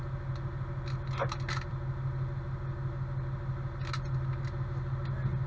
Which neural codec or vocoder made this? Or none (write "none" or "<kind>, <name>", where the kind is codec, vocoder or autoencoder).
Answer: none